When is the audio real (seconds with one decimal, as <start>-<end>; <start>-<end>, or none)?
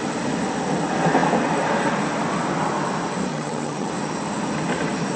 0.0-3.3; 3.9-5.2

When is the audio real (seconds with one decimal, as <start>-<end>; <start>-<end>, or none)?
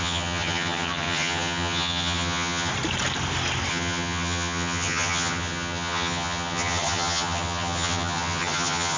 2.7-3.7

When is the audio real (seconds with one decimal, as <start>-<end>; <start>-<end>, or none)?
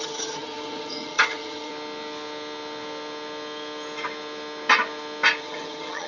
1.7-5.4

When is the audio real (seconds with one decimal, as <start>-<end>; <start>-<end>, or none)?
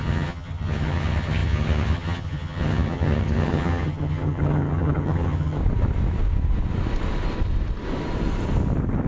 5.6-9.1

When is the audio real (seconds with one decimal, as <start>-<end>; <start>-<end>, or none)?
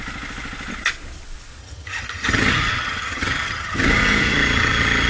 0.0-1.6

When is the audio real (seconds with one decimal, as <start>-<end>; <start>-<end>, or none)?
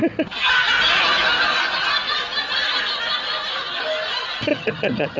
0.0-4.5